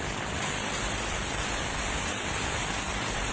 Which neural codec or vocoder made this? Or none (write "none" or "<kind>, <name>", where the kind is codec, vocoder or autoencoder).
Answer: none